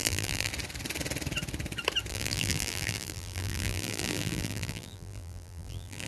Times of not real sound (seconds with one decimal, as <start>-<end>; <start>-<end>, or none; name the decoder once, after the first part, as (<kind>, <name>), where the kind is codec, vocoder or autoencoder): 0.0-0.5 (vocoder, BigVGAN v2); 2.1-6.1